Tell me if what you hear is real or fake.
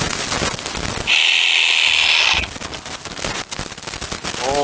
real